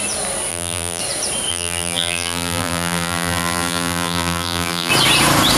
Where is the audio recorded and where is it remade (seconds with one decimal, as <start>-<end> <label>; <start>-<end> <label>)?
0.0-0.5 recorded; 0.5-1.0 remade; 1.0-1.5 recorded; 1.5-4.9 remade; 4.9-5.6 recorded